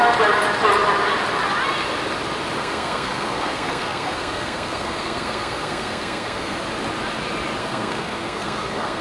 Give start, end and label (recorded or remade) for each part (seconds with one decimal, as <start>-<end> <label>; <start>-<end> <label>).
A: 0.0-2.6 recorded; 2.6-6.6 remade; 6.6-7.6 recorded; 7.6-9.0 remade